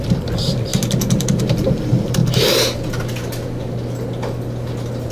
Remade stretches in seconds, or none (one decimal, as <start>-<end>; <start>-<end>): 0.0-0.7; 1.4-2.2